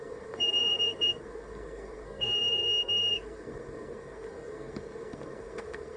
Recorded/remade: remade